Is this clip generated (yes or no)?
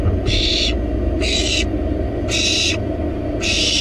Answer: no